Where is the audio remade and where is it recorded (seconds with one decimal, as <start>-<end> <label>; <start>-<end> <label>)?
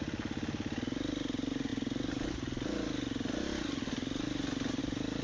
0.0-5.2 recorded